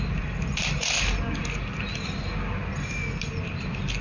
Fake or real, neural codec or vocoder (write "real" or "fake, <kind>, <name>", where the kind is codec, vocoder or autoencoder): real